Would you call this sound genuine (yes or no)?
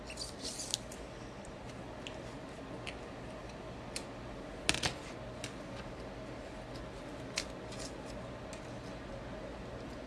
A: yes